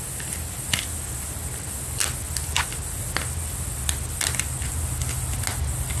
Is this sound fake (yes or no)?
no